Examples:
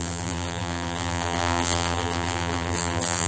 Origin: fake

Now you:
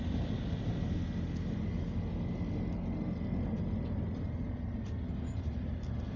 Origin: real